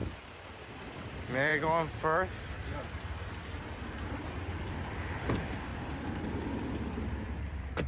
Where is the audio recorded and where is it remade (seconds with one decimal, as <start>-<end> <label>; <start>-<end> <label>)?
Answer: 0.0-1.5 remade; 1.5-3.8 recorded; 3.8-5.7 remade; 5.7-7.0 recorded; 7.0-7.9 remade